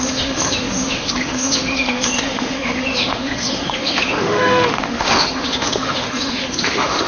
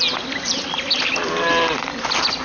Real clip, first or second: second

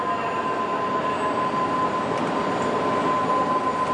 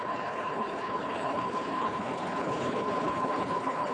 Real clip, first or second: first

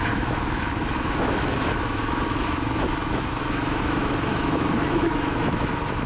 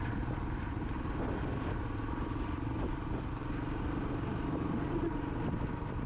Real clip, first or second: second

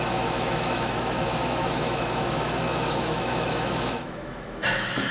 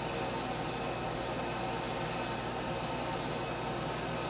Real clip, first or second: second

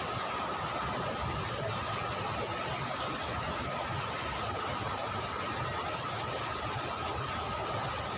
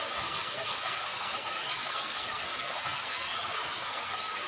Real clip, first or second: first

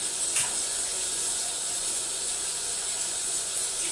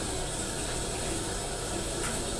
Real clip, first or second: second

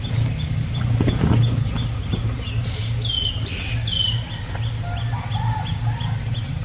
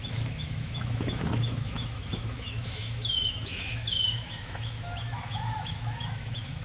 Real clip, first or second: first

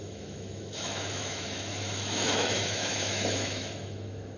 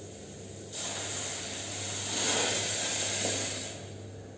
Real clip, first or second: second